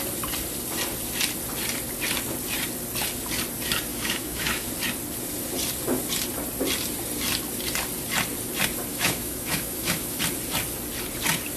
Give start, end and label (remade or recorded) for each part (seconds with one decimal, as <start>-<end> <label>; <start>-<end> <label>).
0.0-3.9 recorded; 3.9-4.7 remade; 4.7-8.9 recorded; 8.9-10.2 remade; 10.2-11.6 recorded